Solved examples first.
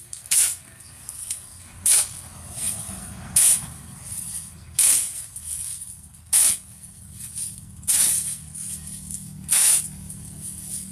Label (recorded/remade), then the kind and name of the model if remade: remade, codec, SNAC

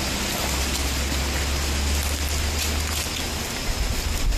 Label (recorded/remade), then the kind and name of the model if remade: recorded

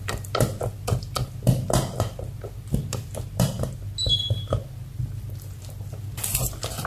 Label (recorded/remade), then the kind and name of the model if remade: recorded